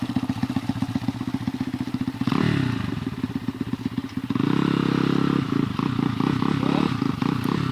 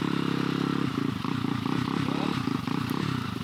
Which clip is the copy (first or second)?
second